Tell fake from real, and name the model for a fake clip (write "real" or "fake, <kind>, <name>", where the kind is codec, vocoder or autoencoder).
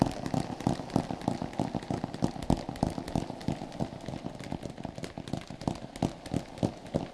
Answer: real